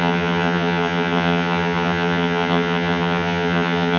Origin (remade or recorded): remade